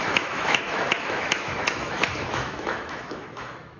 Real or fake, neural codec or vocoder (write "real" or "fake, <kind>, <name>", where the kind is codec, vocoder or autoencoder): fake, autoencoder, DAC-VAE